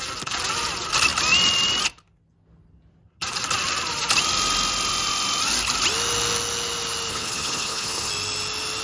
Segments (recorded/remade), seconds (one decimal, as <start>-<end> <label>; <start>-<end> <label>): 0.0-7.1 recorded; 7.1-8.1 remade; 8.1-8.8 recorded